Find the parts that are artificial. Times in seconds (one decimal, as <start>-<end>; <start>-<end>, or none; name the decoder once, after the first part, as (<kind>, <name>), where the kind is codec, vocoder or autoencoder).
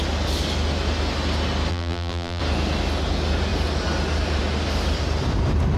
1.7-2.4 (vocoder, BigVGAN v2)